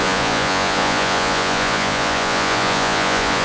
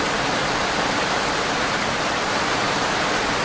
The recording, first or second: second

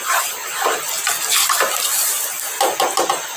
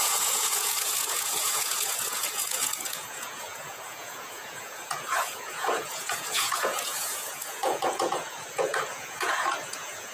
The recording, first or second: first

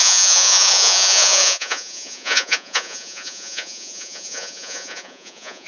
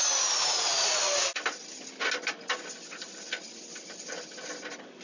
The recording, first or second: second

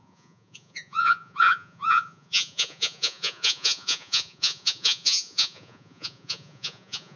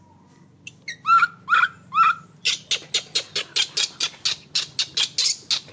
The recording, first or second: second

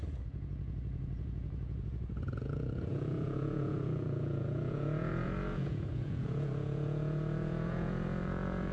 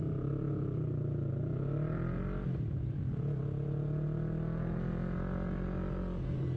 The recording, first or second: second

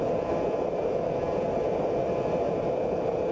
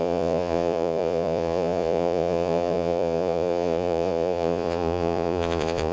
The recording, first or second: first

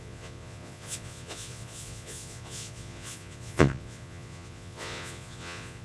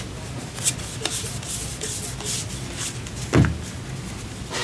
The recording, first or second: second